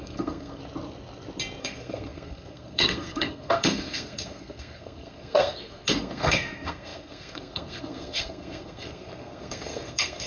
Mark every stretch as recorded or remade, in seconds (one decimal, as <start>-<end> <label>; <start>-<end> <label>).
0.0-0.6 remade; 0.6-1.6 recorded; 1.6-10.3 remade

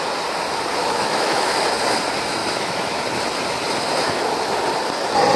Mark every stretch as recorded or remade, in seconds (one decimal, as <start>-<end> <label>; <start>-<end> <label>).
0.0-0.8 recorded; 0.8-1.6 remade; 1.6-2.4 recorded; 2.4-3.0 remade; 3.0-5.4 recorded

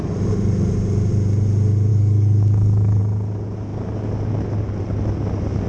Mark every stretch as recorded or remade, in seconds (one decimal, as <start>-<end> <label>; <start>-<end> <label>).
0.0-1.9 recorded; 1.9-3.0 remade; 3.0-5.7 recorded

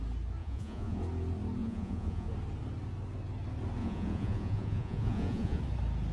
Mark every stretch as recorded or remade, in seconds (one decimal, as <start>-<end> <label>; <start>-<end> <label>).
0.0-0.4 recorded; 0.4-1.0 remade; 1.0-1.6 recorded; 1.6-2.3 remade; 2.3-3.8 recorded; 3.8-5.6 remade; 5.6-6.1 recorded

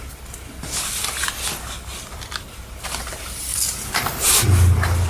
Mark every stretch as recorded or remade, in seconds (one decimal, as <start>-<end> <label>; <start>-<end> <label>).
0.0-1.0 recorded; 1.0-2.6 remade; 2.6-5.1 recorded

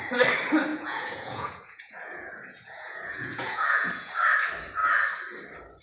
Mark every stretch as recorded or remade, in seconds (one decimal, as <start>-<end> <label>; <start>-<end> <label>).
0.0-0.7 recorded; 0.7-4.1 remade; 4.1-5.8 recorded

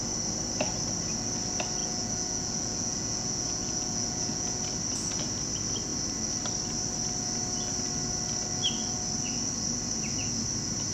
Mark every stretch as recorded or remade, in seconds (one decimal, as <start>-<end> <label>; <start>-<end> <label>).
0.0-1.8 recorded; 1.8-4.6 remade; 4.6-10.9 recorded